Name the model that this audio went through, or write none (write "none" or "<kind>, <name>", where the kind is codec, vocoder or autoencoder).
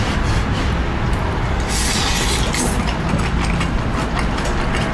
none